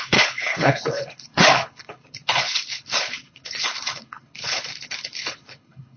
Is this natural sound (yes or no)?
no